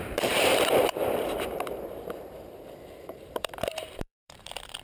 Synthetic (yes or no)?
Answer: yes